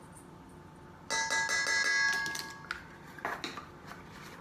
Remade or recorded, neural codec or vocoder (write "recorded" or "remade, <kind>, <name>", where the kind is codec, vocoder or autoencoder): recorded